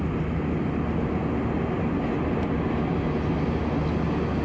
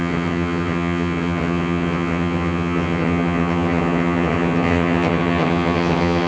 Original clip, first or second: first